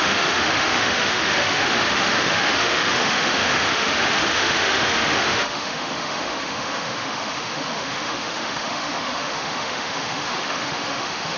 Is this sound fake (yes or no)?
yes